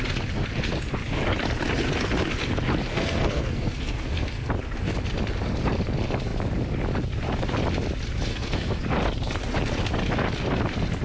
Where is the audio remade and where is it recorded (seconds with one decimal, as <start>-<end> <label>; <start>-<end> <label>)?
0.0-2.9 recorded; 2.9-4.5 remade; 4.5-8.3 recorded; 8.3-8.8 remade; 8.8-11.0 recorded